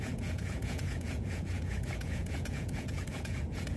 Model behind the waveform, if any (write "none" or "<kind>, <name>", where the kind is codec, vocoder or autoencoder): vocoder, Vocos